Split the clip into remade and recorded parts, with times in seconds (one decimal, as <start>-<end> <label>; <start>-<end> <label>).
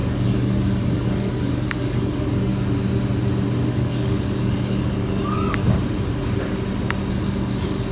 0.0-2.5 remade; 2.5-3.7 recorded; 3.7-5.6 remade; 5.6-7.1 recorded; 7.1-7.9 remade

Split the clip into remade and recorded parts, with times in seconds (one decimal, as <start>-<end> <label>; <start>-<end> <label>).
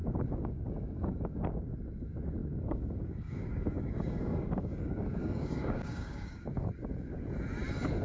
0.0-1.7 remade; 1.7-2.4 recorded; 2.4-7.2 remade; 7.2-8.0 recorded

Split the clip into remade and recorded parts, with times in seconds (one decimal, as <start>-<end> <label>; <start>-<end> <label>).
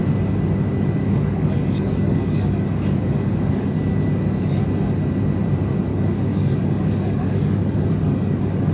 0.0-1.0 recorded; 1.0-4.6 remade; 4.6-5.9 recorded; 5.9-8.7 remade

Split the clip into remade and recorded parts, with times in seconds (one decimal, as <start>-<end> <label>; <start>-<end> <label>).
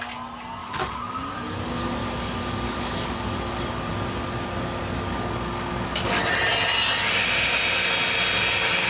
0.0-0.6 recorded; 0.6-1.2 remade; 1.2-2.0 recorded; 2.0-3.9 remade; 3.9-5.1 recorded; 5.1-6.1 remade; 6.1-8.9 recorded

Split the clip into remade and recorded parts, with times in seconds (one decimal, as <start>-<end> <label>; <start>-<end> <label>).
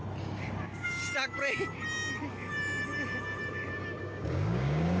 0.0-0.6 recorded; 0.6-1.0 remade; 1.0-4.0 recorded; 4.0-5.0 remade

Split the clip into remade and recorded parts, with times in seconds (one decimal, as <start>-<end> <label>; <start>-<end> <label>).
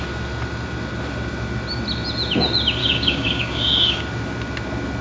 0.0-2.8 recorded; 2.8-4.0 remade; 4.0-5.0 recorded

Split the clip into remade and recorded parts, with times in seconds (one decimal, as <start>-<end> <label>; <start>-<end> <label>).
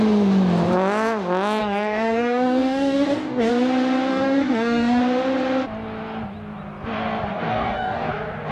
0.0-1.6 recorded; 1.6-3.5 remade; 3.5-4.1 recorded; 4.1-5.0 remade; 5.0-7.3 recorded; 7.3-8.1 remade; 8.1-8.5 recorded